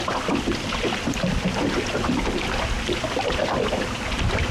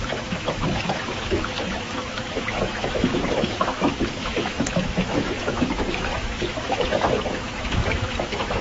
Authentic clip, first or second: first